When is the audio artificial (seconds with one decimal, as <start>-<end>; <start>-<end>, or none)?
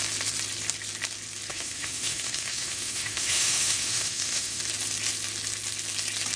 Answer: 1.5-4.6